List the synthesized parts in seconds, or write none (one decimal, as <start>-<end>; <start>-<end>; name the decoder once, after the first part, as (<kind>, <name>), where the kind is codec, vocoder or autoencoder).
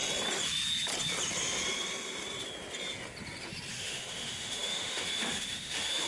3.7-6.1 (autoencoder, DAC-VAE)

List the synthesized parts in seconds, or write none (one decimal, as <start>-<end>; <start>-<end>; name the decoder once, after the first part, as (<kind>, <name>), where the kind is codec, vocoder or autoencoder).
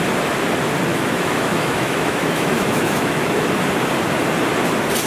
0.9-3.5 (autoencoder, DAC-VAE)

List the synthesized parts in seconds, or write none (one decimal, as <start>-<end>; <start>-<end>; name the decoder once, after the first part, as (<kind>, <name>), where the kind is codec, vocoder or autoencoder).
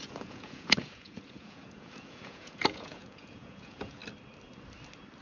0.0-4.0 (vocoder, Vocos)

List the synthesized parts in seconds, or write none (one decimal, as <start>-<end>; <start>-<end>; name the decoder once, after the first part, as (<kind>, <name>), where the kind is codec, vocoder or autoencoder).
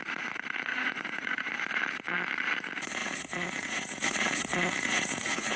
0.7-1.5 (vocoder, Vocos); 3.0-5.6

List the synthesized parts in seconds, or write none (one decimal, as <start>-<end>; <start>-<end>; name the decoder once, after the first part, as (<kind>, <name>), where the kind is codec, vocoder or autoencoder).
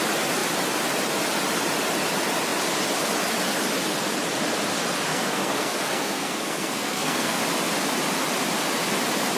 5.1-7.4 (codec, SNAC)